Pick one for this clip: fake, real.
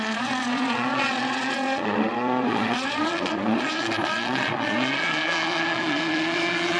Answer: fake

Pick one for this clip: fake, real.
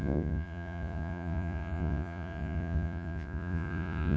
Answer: fake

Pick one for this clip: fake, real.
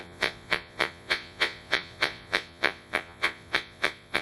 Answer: fake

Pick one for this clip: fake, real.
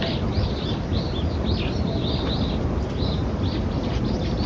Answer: real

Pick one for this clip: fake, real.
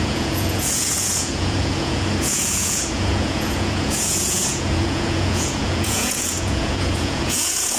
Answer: fake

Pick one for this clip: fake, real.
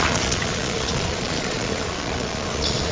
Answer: fake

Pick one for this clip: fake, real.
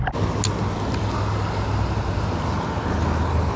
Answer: real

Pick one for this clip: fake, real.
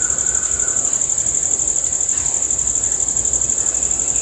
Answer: real